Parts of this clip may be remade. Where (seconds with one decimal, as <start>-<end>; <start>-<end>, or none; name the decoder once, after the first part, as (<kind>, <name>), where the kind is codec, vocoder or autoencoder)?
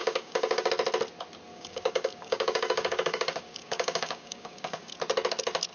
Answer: 0.0-0.7 (codec, DAC); 1.5-4.9